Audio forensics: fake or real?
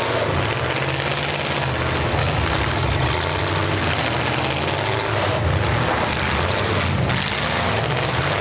real